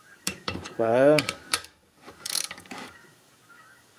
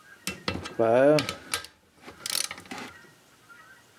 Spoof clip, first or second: first